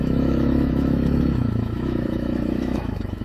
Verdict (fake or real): fake